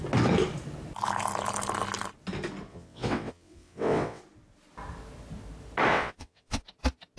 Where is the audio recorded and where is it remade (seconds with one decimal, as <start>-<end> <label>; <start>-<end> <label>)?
0.0-2.7 recorded; 2.7-4.2 remade; 4.2-5.9 recorded; 5.9-6.6 remade; 6.6-7.2 recorded

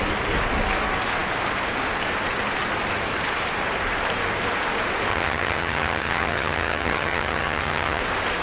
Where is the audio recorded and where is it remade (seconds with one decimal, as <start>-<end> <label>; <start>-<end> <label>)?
0.0-5.1 recorded; 5.1-8.0 remade; 8.0-8.4 recorded

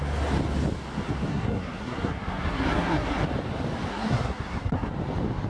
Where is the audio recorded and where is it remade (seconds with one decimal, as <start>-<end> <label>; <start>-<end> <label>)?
0.0-1.3 recorded; 1.3-3.2 remade; 3.2-3.9 recorded; 3.9-4.9 remade; 4.9-5.5 recorded

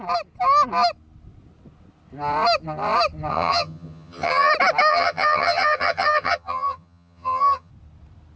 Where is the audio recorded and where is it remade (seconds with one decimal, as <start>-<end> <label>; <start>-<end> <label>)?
0.0-3.3 recorded; 3.3-4.5 remade; 4.5-4.9 recorded; 4.9-7.7 remade; 7.7-8.4 recorded

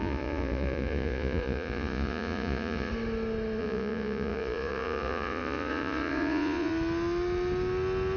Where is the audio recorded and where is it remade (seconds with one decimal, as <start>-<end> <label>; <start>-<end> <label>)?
0.0-2.9 remade; 2.9-3.6 recorded; 3.6-6.7 remade; 6.7-8.2 recorded

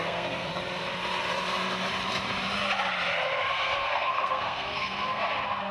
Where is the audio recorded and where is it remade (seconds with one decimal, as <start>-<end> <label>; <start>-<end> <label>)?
0.0-0.5 remade; 0.5-3.5 recorded; 3.5-5.7 remade

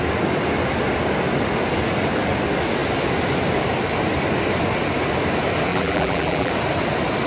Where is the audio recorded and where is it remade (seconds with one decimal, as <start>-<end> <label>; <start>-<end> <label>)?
0.0-5.7 recorded; 5.7-6.5 remade; 6.5-7.3 recorded

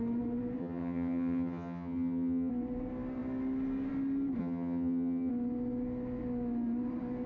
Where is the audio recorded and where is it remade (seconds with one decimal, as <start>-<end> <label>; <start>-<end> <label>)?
0.0-0.6 recorded; 0.6-2.5 remade; 2.5-4.4 recorded; 4.4-5.3 remade; 5.3-7.3 recorded